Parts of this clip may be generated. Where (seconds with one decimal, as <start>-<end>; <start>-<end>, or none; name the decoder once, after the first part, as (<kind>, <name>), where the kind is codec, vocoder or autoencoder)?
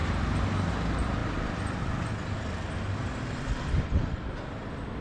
3.0-3.5 (vocoder, BigVGAN v2)